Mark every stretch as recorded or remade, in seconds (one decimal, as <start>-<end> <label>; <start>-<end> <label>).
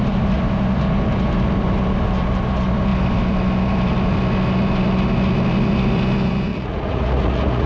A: 0.0-6.5 recorded; 6.5-7.7 remade